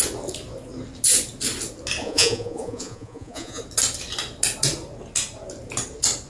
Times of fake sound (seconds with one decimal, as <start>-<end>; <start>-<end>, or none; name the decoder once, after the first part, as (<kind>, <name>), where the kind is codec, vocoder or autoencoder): 2.0-3.6 (vocoder, Vocos)